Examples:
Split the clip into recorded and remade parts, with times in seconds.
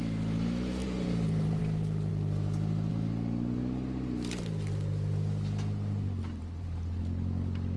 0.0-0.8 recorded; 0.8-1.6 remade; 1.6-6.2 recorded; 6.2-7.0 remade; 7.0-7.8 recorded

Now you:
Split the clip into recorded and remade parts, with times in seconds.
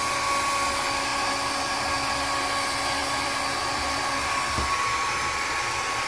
0.0-3.0 recorded; 3.0-4.6 remade; 4.6-6.1 recorded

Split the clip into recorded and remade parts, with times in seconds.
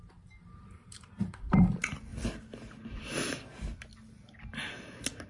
0.0-2.1 remade; 2.1-5.3 recorded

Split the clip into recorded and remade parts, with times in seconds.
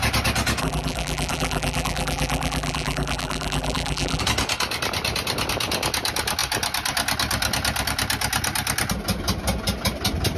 0.0-0.6 recorded; 0.6-4.2 remade; 4.2-10.4 recorded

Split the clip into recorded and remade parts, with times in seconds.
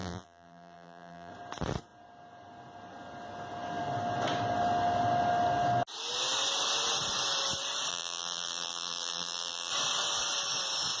0.0-1.3 remade; 1.3-7.9 recorded; 7.9-9.7 remade; 9.7-11.0 recorded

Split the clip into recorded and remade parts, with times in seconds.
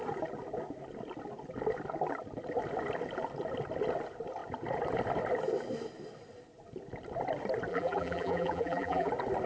0.0-7.7 recorded; 7.7-9.1 remade; 9.1-9.5 recorded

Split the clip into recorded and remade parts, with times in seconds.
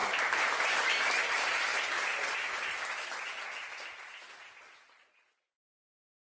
0.0-0.8 remade; 0.8-6.3 recorded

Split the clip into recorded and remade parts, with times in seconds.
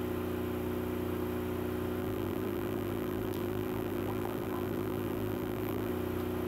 0.0-2.0 recorded; 2.0-5.9 remade; 5.9-6.5 recorded